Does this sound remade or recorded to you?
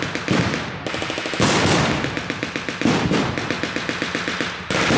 recorded